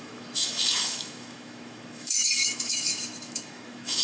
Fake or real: fake